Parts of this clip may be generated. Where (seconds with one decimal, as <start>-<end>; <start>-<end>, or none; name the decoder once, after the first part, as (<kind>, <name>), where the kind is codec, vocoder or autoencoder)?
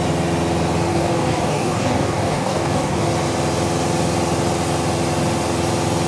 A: 0.9-3.1 (codec, DAC)